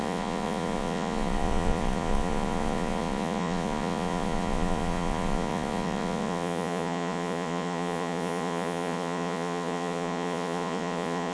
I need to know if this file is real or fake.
fake